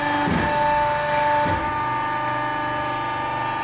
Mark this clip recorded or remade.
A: recorded